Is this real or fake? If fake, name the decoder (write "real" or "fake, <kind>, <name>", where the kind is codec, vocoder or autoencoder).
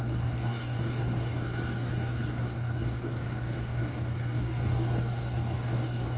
fake, codec, DAC